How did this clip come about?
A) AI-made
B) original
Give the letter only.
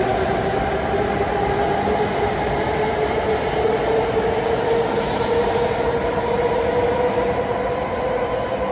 B